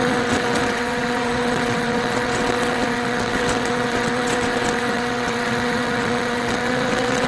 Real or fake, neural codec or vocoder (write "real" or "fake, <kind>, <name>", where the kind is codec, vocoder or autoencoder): fake, vocoder, WaveNeXt